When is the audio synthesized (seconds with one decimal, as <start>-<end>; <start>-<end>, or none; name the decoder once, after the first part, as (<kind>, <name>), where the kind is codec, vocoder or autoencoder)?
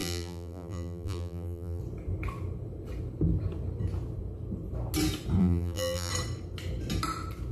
0.0-1.8 (vocoder, BigVGAN v2); 5.4-6.1